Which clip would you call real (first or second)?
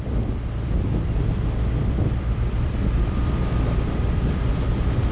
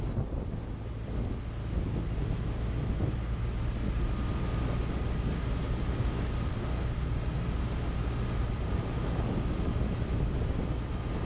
second